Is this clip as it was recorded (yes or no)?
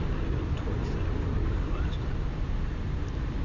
yes